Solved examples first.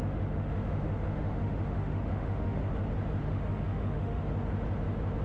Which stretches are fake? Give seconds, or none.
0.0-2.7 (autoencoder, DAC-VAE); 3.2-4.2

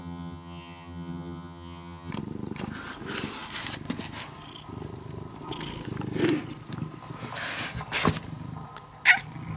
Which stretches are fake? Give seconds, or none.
0.0-2.1 (vocoder, HiFi-GAN)